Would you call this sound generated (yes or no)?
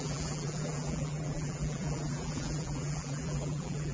yes